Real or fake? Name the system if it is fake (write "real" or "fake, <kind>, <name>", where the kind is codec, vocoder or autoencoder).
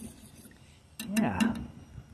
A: real